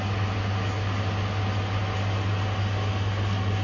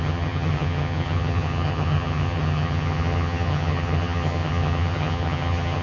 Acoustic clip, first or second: first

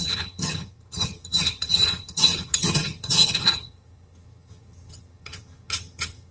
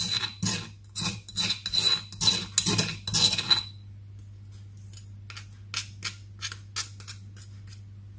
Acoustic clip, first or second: second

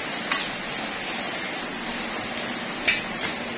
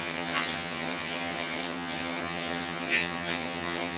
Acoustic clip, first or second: first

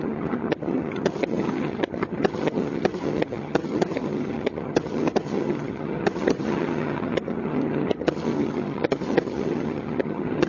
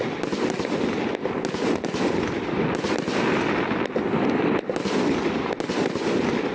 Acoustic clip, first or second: second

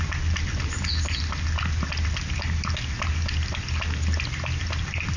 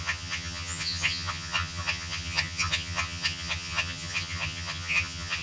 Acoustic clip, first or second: first